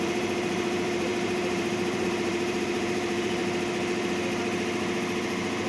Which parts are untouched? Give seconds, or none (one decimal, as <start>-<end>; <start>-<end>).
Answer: 3.4-5.7